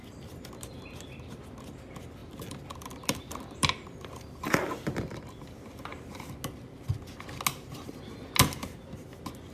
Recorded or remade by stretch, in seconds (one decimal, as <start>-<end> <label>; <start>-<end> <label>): 0.0-0.5 remade; 0.5-2.2 recorded; 2.2-5.2 remade; 5.2-9.5 recorded